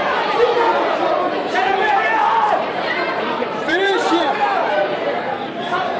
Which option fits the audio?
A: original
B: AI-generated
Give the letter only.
B